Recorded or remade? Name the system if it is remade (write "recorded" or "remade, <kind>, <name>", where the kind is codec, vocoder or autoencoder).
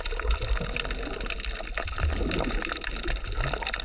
recorded